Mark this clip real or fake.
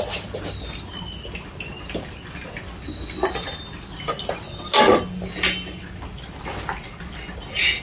real